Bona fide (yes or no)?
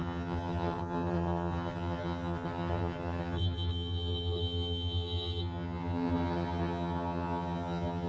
no